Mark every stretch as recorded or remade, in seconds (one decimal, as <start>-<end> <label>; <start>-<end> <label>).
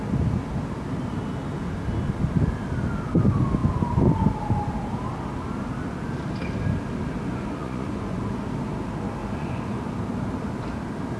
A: 0.0-7.3 recorded; 7.3-8.4 remade; 8.4-9.2 recorded; 9.2-9.8 remade; 9.8-11.2 recorded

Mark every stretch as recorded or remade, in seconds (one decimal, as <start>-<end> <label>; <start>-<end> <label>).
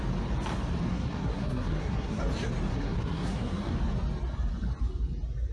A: 0.0-0.9 recorded; 0.9-2.2 remade; 2.2-2.7 recorded; 2.7-3.7 remade; 3.7-5.5 recorded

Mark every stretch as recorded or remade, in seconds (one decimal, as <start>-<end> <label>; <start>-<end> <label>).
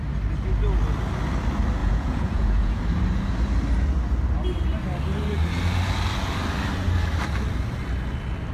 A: 0.0-1.8 recorded; 1.8-2.8 remade; 2.8-8.5 recorded